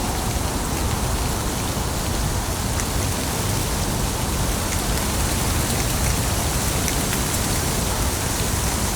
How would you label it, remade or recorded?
recorded